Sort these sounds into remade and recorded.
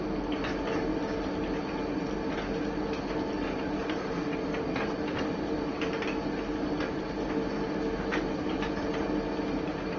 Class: recorded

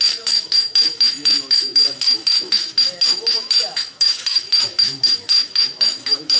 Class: remade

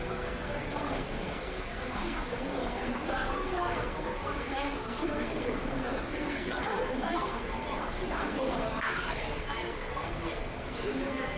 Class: remade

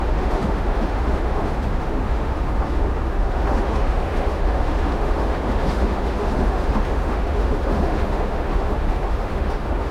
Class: remade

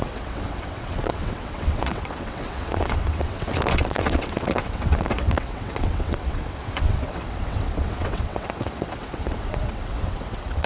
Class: remade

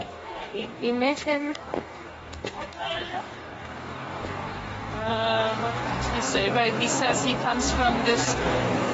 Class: remade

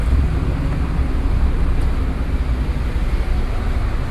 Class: recorded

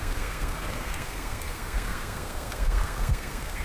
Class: remade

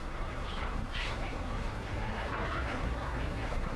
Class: remade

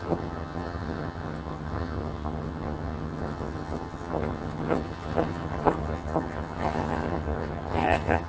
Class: remade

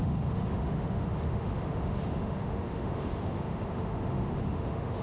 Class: remade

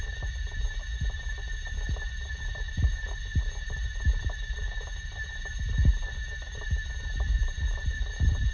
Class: recorded